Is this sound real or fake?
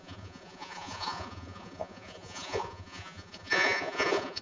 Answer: fake